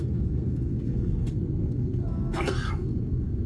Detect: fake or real fake